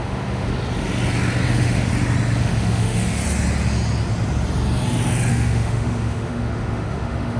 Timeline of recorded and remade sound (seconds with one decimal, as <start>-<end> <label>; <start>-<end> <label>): 0.0-0.5 remade; 0.5-1.5 recorded; 1.5-1.9 remade; 1.9-2.4 recorded; 2.4-3.2 remade; 3.2-5.3 recorded; 5.3-7.4 remade